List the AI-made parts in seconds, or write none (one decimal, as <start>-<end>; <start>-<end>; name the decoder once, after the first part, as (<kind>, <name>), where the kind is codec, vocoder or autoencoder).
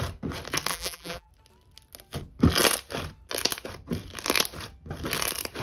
0.7-1.3 (vocoder, BigVGAN v2)